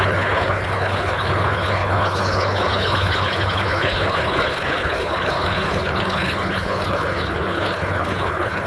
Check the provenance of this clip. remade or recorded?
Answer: remade